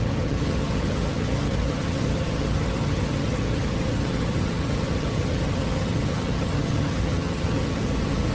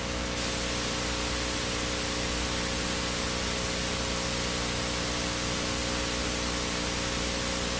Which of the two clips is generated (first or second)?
first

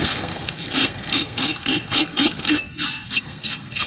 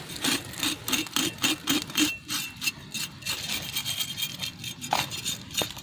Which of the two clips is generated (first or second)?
first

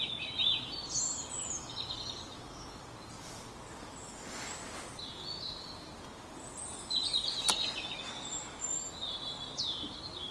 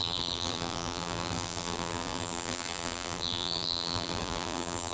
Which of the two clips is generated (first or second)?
second